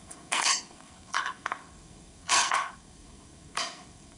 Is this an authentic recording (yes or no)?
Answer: no